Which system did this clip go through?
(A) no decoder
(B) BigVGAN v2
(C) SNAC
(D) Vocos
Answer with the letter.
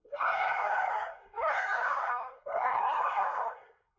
C